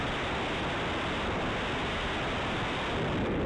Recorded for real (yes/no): yes